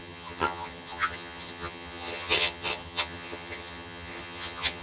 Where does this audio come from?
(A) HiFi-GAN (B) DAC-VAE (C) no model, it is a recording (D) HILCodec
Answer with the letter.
A